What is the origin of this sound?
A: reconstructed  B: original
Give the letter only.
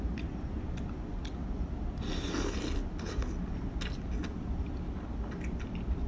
B